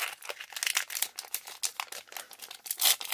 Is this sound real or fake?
real